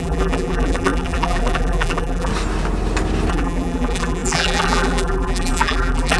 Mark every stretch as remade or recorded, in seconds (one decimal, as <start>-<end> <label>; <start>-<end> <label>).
0.0-2.3 remade; 2.3-3.3 recorded; 3.3-6.2 remade